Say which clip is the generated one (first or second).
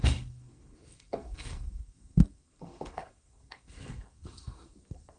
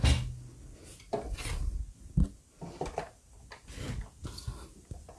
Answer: first